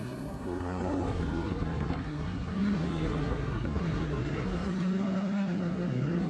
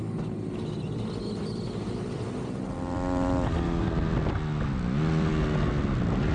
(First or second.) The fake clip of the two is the first